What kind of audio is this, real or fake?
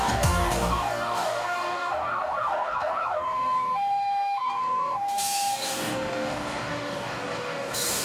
fake